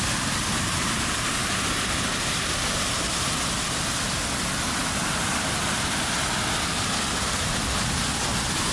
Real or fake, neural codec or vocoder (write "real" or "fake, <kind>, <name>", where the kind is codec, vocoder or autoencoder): real